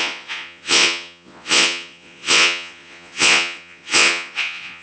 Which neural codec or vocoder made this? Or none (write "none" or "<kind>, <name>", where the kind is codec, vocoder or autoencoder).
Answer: vocoder, Vocos